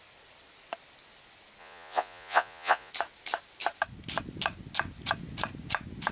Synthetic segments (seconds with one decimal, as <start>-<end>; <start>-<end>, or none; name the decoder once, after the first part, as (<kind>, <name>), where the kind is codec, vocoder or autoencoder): 1.6-2.9 (vocoder, Vocos)